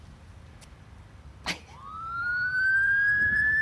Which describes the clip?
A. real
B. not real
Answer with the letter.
B